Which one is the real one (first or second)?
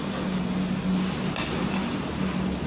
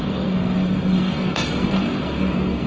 first